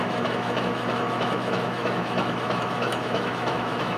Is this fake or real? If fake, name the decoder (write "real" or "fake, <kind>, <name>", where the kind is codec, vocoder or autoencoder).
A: fake, autoencoder, DAC-VAE